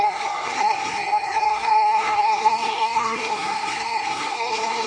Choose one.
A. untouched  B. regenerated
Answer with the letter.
B